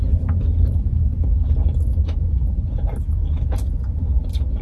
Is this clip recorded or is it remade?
recorded